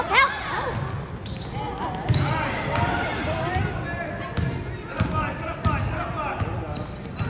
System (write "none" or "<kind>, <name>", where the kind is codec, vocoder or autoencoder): none